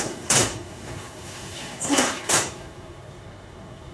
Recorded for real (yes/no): no